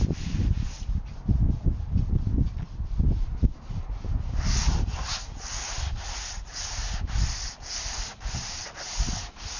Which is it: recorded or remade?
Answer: recorded